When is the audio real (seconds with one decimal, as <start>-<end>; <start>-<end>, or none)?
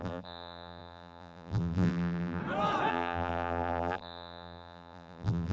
2.4-2.9